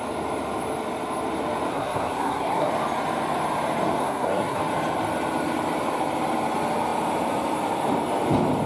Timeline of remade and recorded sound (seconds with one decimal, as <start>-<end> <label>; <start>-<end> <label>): 0.0-1.7 recorded; 1.7-2.7 remade; 2.7-4.0 recorded; 4.0-4.6 remade; 4.6-8.7 recorded